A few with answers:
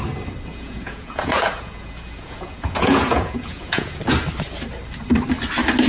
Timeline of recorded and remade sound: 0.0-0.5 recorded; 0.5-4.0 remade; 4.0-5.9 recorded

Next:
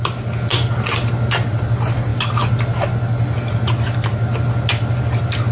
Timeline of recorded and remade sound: 0.0-5.5 recorded

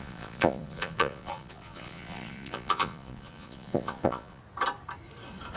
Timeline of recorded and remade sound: 0.0-4.4 remade; 4.4-5.6 recorded